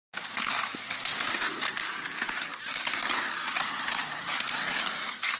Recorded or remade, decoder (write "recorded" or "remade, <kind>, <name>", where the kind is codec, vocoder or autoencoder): recorded